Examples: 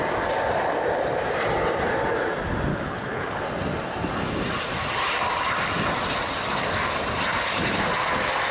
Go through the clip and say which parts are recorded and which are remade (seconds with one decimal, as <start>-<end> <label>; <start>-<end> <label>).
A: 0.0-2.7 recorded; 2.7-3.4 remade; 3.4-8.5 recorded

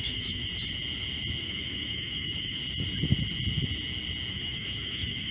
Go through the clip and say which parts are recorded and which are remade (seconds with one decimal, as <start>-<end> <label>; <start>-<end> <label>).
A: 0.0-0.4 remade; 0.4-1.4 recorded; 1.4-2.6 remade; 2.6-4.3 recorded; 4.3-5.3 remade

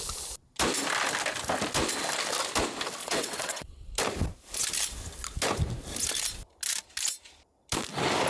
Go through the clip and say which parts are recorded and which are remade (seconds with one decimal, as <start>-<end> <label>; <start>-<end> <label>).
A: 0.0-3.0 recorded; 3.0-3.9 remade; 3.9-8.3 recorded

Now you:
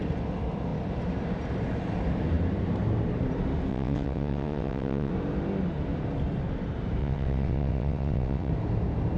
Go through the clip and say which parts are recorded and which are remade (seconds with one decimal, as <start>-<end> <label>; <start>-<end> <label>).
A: 0.0-3.7 recorded; 3.7-5.1 remade; 5.1-7.0 recorded; 7.0-8.5 remade; 8.5-9.2 recorded